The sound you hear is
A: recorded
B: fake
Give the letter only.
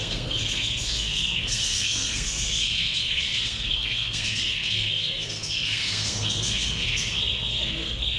B